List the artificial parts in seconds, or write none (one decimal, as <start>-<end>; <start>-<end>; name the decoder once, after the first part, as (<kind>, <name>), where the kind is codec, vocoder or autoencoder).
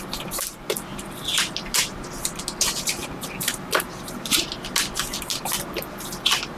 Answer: 0.9-1.5 (vocoder, BigVGAN v2); 3.0-4.5